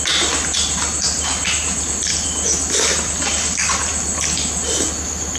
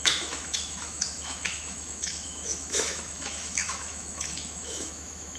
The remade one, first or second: second